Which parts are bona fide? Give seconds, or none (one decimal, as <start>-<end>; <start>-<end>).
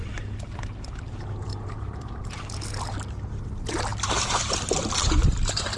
0.0-1.5; 2.4-3.9